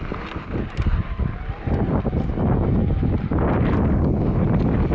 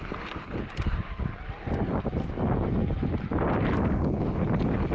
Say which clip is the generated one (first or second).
second